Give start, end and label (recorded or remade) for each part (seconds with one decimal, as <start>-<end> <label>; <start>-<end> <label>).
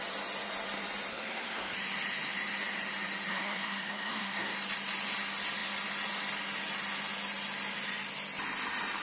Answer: 0.0-1.1 recorded; 1.1-1.7 remade; 1.7-3.3 recorded; 3.3-4.5 remade; 4.5-9.0 recorded